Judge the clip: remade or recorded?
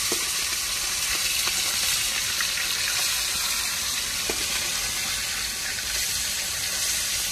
recorded